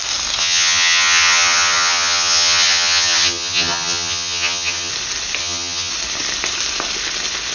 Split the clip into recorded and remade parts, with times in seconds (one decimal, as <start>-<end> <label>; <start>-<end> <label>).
0.0-0.4 recorded; 0.4-4.9 remade; 4.9-5.4 recorded; 5.4-5.9 remade; 5.9-7.5 recorded